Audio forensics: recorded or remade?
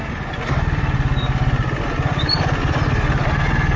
recorded